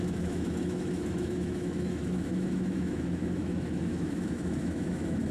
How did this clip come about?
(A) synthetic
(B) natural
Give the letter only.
A